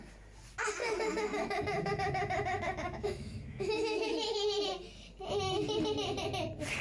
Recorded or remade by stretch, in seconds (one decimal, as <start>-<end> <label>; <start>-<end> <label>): 0.0-0.8 recorded; 0.8-4.1 remade; 4.1-6.8 recorded

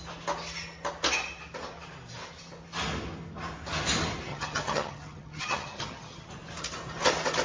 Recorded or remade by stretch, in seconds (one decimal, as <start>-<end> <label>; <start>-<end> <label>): 0.0-4.3 recorded; 4.3-6.3 remade; 6.3-7.4 recorded

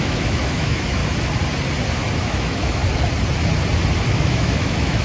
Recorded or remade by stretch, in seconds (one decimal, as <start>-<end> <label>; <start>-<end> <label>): 0.0-1.0 remade; 1.0-2.2 recorded; 2.2-2.8 remade; 2.8-4.1 recorded; 4.1-5.0 remade

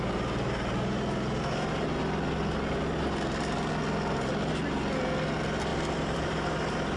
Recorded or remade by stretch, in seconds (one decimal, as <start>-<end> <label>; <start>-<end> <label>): 0.0-5.7 recorded; 5.7-7.0 remade

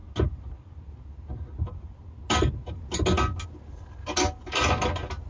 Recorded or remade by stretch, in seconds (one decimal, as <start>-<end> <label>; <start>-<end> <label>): 0.0-5.3 recorded

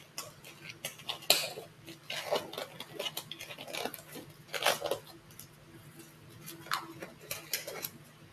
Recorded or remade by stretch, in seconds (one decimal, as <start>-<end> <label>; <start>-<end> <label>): 0.0-8.3 recorded